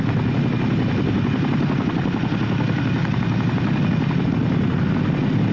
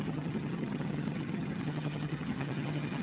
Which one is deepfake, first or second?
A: second